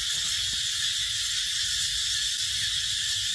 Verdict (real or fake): real